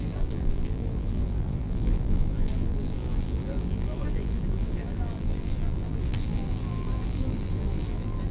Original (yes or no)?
no